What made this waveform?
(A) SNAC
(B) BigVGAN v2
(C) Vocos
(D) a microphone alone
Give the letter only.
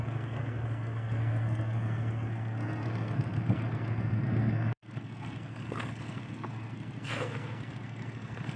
A